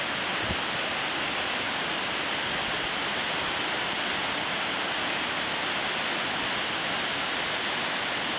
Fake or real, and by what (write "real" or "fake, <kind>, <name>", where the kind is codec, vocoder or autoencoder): real